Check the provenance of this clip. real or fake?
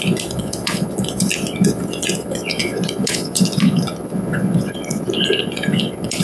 fake